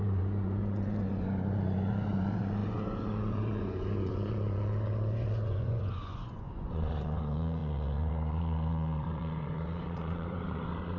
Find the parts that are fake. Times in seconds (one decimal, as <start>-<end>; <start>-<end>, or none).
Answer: 0.0-11.0